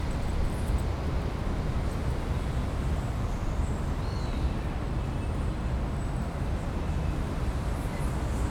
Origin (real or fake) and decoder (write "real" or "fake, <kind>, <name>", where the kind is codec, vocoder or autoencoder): real